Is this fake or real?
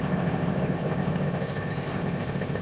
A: fake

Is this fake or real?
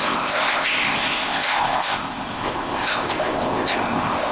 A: fake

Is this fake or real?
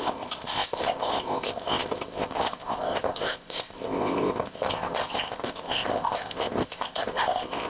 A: fake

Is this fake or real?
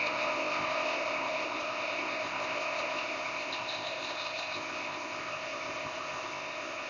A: fake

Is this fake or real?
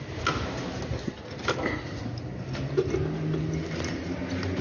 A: real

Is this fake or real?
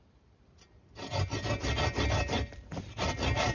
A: real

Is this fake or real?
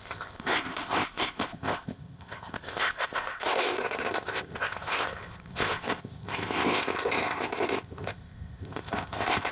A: fake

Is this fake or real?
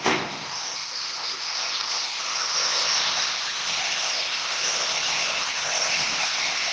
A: fake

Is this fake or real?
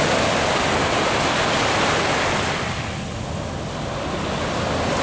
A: real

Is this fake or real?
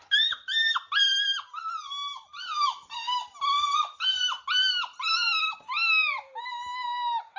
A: real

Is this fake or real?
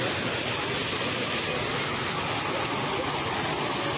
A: real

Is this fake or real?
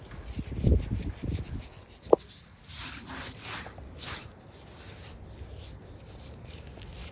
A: real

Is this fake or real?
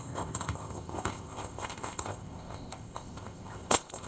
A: fake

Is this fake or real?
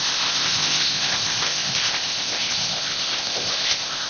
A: fake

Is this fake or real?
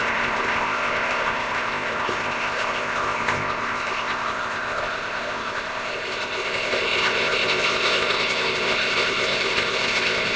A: fake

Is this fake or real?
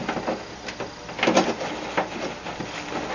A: real